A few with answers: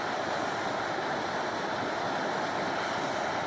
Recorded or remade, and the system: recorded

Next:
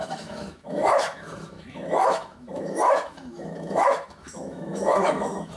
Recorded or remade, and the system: remade, autoencoder, DAC-VAE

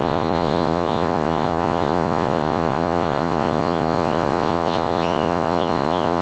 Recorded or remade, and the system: remade, vocoder, Vocos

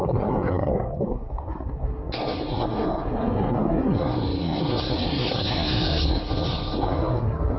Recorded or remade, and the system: remade, codec, SNAC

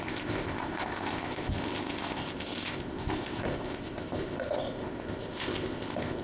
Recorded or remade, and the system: remade, codec, ZipCodec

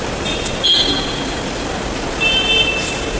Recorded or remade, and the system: recorded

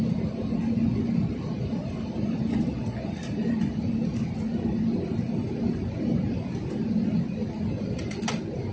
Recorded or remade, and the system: recorded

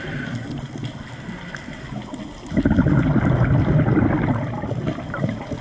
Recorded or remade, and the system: recorded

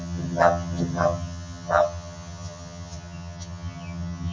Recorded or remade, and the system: remade, vocoder, HiFi-GAN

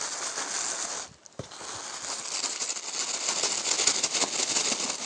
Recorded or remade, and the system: recorded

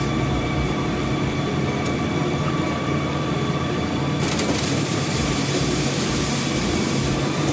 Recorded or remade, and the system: remade, vocoder, BigVGAN v2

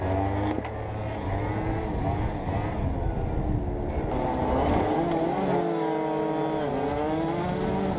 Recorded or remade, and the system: recorded